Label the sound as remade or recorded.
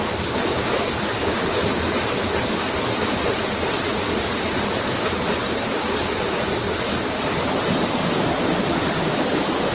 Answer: recorded